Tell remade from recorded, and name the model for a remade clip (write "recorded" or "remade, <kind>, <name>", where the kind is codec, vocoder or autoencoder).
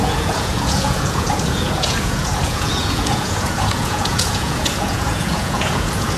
remade, vocoder, Vocos